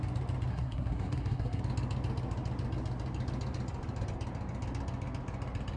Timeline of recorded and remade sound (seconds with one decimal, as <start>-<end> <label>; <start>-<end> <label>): 0.0-0.5 recorded; 0.5-1.6 remade; 1.6-5.8 recorded